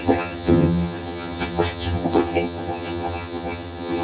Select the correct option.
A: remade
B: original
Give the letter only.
A